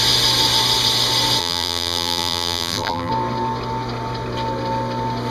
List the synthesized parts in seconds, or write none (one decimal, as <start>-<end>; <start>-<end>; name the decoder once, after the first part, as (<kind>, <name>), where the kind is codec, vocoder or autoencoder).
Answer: 1.4-3.1 (vocoder, BigVGAN v2)